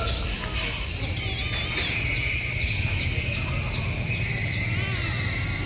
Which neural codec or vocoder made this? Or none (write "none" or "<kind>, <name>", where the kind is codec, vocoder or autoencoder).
none